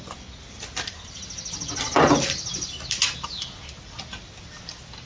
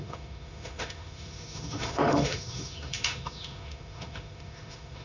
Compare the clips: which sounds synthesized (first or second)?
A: second